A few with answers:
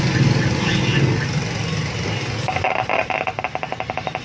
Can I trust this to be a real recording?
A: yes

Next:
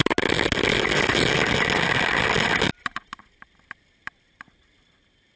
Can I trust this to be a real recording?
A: yes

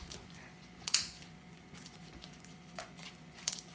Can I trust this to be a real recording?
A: no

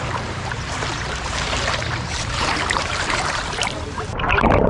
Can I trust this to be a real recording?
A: no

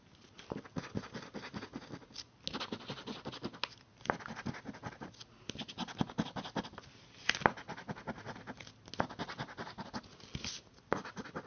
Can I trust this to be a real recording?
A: yes